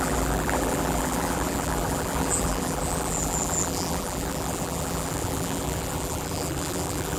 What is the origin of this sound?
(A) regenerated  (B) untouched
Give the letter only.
A